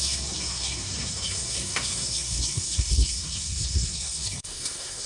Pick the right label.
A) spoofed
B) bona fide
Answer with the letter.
A